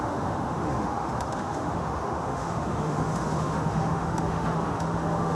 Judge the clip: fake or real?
fake